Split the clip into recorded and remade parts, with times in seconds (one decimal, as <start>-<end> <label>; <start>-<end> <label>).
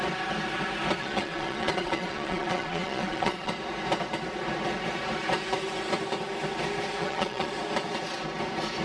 0.0-1.0 recorded; 1.0-3.5 remade; 3.5-7.0 recorded; 7.0-7.5 remade; 7.5-8.8 recorded